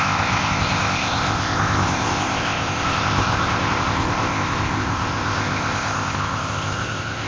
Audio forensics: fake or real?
fake